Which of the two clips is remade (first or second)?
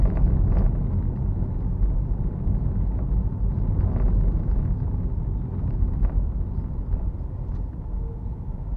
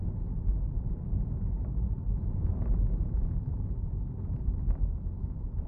second